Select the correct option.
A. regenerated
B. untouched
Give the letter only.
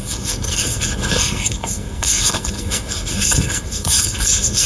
A